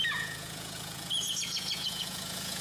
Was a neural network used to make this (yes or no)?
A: yes